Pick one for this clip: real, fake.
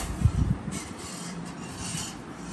fake